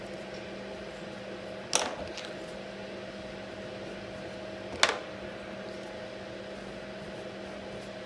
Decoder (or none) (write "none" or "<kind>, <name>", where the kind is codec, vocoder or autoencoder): none